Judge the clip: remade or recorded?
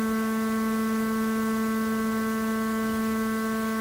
recorded